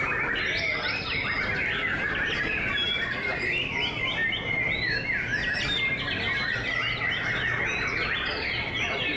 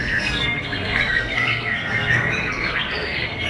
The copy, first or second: second